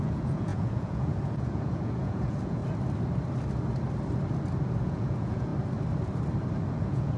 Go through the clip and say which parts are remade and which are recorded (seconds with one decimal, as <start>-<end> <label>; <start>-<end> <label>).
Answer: 0.0-2.6 remade; 2.6-4.8 recorded; 4.8-5.5 remade; 5.5-6.7 recorded; 6.7-7.2 remade